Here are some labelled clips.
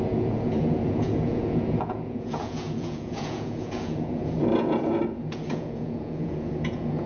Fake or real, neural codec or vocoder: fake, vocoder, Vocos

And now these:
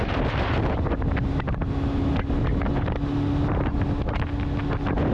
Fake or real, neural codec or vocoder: real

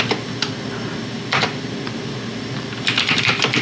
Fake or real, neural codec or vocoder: real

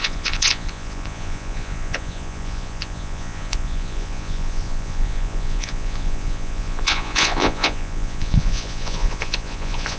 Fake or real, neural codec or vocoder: fake, vocoder, Vocos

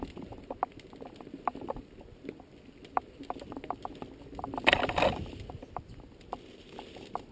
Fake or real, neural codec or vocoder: real